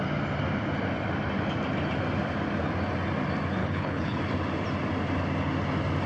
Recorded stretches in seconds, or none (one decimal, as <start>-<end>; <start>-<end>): 0.0-3.6; 4.2-6.1